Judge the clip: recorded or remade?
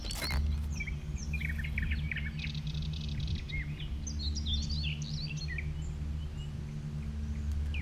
recorded